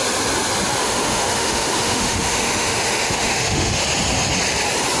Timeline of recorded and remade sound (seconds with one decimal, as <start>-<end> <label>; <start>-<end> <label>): 0.0-0.8 recorded; 0.8-3.8 remade; 3.8-5.0 recorded